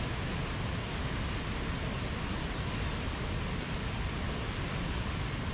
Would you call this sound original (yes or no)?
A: yes